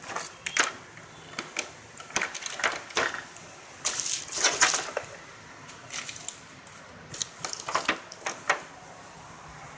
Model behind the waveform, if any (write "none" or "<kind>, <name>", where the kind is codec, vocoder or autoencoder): none